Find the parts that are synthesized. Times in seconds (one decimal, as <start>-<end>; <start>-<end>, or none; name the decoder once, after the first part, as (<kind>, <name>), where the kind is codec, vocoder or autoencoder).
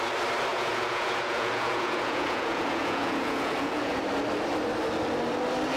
0.5-4.0 (vocoder, Vocos)